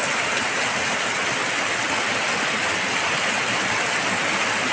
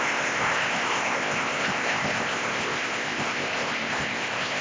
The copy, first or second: second